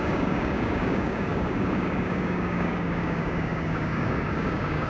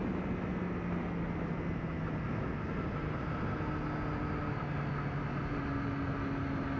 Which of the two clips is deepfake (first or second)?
first